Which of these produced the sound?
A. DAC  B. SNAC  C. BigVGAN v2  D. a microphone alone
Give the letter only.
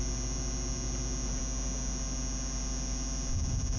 D